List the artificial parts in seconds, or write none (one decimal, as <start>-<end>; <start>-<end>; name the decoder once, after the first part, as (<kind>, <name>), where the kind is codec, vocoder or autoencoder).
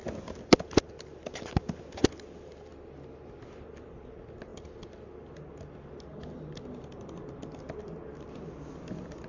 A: none